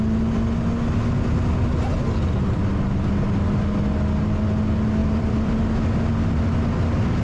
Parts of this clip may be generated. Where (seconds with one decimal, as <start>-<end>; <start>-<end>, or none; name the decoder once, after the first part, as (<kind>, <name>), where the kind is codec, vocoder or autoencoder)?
5.0-5.5 (vocoder, BigVGAN v2)